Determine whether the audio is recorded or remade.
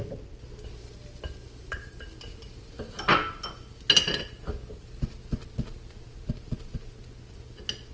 recorded